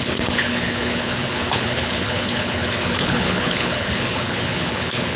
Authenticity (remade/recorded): remade